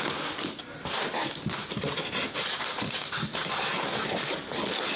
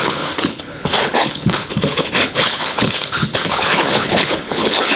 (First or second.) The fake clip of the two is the second